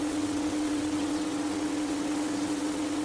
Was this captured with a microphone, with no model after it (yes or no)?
no